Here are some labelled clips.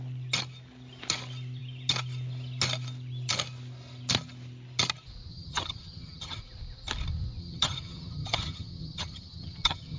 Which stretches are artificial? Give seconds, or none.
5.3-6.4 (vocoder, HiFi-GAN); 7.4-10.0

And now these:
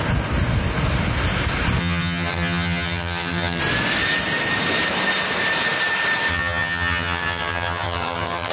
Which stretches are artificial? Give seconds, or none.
1.8-3.6 (vocoder, HiFi-GAN); 6.3-8.5

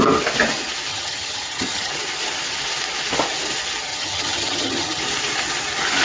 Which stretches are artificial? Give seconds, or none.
0.9-1.9 (vocoder, HiFi-GAN); 3.9-5.0

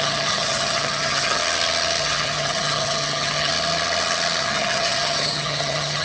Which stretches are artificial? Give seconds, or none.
0.0-1.4 (vocoder, HiFi-GAN); 2.0-3.5; 4.4-6.0

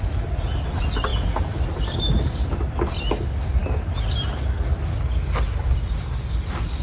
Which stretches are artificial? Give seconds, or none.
none